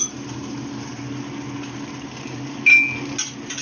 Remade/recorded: recorded